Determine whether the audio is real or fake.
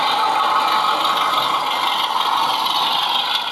real